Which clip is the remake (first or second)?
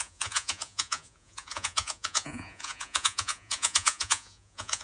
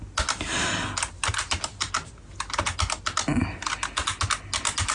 first